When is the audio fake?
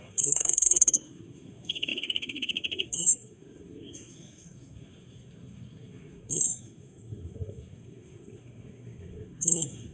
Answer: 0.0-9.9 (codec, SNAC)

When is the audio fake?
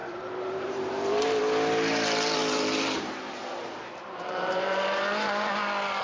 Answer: 0.0-1.4 (vocoder, BigVGAN v2); 2.4-5.5